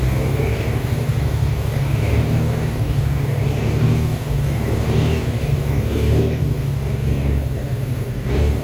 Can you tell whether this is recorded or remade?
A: remade